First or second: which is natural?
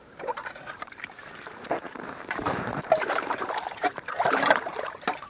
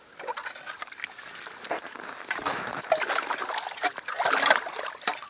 second